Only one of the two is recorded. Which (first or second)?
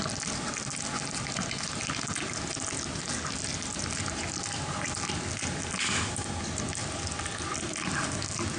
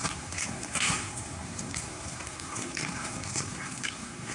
first